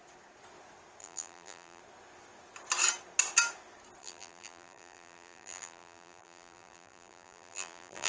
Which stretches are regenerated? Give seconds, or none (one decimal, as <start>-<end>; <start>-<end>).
1.0-1.8; 4.0-8.1